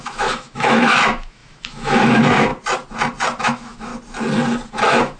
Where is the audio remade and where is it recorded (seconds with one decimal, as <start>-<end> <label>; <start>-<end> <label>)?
0.0-2.5 remade; 2.5-3.4 recorded; 3.4-3.9 remade; 3.9-4.7 recorded; 4.7-5.2 remade